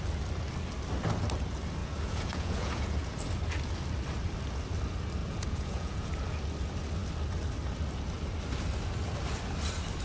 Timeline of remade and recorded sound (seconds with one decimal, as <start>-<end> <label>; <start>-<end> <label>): 0.0-1.8 recorded; 1.8-3.2 remade; 3.2-5.2 recorded; 5.2-6.1 remade; 6.1-10.0 recorded